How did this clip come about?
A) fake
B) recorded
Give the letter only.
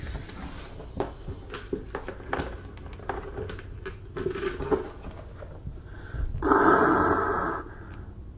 B